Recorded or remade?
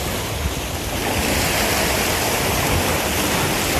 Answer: recorded